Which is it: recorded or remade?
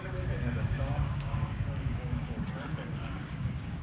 remade